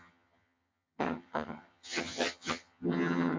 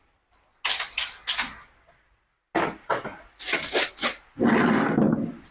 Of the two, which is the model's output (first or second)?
first